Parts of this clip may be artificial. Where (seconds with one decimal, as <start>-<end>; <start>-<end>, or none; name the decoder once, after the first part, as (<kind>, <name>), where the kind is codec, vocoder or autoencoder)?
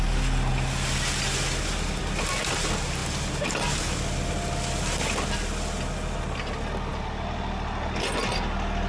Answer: none